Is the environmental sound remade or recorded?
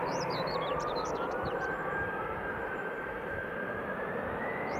remade